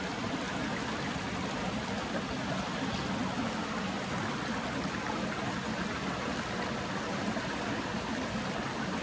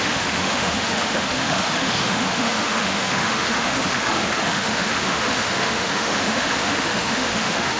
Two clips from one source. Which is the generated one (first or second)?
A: second